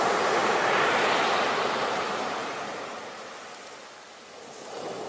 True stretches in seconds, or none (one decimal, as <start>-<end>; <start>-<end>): 0.0-5.1